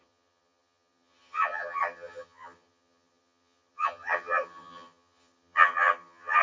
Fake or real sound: fake